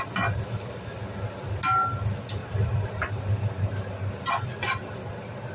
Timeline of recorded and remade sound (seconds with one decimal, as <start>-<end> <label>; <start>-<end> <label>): 0.0-2.4 recorded; 2.4-4.3 remade; 4.3-5.5 recorded